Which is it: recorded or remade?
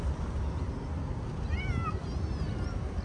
recorded